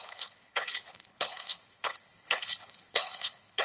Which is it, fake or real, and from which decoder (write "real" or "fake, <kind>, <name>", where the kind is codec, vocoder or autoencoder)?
fake, codec, HILCodec